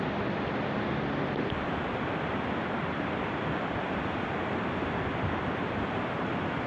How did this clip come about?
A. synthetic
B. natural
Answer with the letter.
A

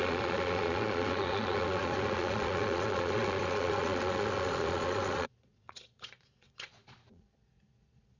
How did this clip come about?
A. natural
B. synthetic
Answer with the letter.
B